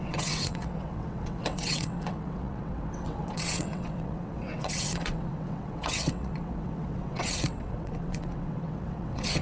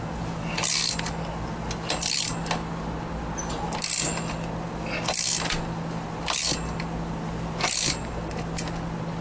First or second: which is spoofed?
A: first